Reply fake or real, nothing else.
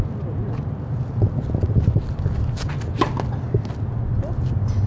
real